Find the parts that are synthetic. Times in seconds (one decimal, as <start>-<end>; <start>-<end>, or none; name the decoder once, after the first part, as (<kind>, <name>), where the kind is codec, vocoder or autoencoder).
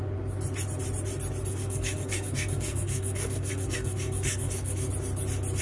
1.5-4.9 (codec, SNAC)